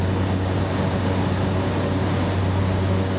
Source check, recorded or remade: recorded